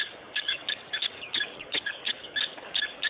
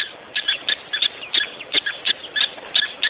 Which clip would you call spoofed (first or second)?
first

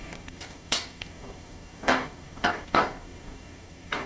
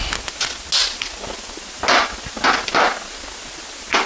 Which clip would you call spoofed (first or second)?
first